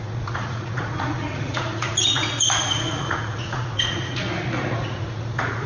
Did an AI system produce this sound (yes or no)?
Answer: yes